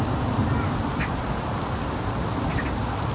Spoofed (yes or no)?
no